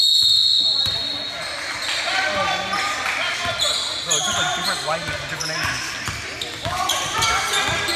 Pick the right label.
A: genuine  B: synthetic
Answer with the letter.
A